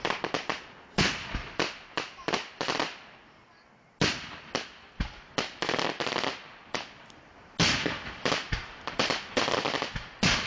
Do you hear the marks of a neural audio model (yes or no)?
no